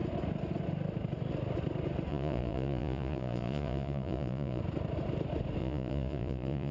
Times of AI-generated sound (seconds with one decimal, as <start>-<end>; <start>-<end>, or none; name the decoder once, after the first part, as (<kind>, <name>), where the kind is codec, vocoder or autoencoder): 2.1-4.6 (vocoder, Vocos); 5.6-6.7